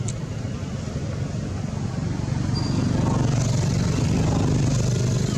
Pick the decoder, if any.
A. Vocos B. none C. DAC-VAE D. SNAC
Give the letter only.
B